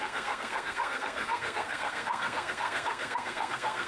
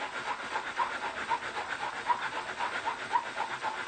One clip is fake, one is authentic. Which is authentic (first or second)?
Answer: second